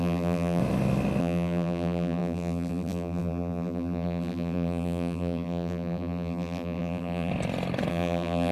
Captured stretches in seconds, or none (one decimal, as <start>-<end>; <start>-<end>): 0.6-1.2; 7.3-7.9